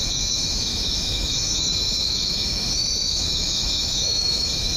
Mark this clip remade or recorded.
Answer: remade